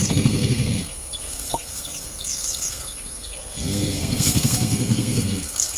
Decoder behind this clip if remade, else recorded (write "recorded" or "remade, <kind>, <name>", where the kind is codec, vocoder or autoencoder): remade, codec, SNAC